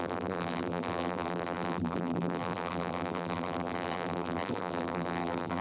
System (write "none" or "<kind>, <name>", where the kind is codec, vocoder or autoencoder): vocoder, BigVGAN v2